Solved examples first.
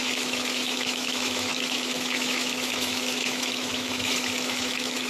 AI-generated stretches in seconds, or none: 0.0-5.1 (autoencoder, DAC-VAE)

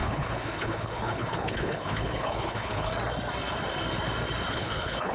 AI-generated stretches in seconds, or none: 0.0-2.9 (codec, HILCodec); 4.5-5.1

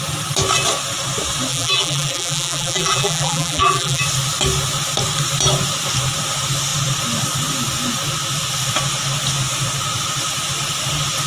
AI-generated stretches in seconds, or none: 1.5-4.0 (vocoder, BigVGAN v2)